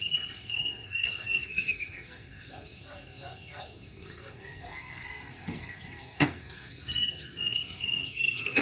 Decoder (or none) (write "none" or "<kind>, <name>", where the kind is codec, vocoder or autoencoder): codec, SNAC